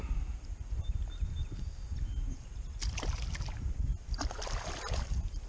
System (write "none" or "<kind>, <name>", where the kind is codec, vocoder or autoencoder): none